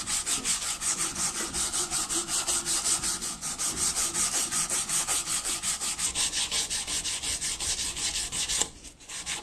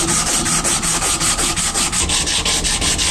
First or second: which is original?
second